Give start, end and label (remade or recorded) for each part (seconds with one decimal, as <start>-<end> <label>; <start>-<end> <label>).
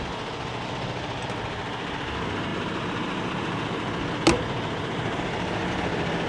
0.0-6.3 recorded